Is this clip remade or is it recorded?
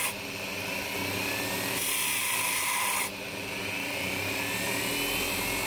recorded